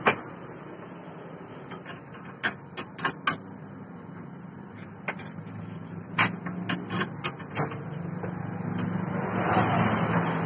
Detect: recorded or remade recorded